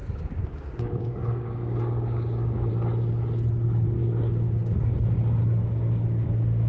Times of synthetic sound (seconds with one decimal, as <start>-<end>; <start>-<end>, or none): 0.0-2.7; 4.0-4.8; 5.6-6.7